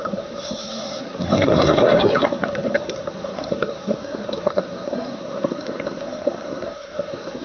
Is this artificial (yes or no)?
yes